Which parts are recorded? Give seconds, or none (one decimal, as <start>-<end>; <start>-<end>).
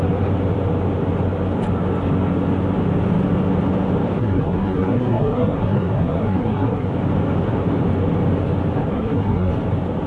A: 0.0-4.2; 6.9-8.9; 9.5-10.1